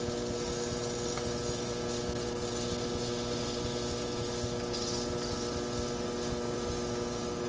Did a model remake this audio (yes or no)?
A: no